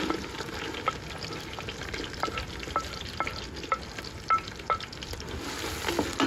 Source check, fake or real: real